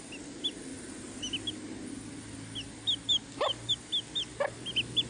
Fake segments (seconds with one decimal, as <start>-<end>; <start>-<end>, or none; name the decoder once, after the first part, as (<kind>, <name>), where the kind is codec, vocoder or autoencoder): none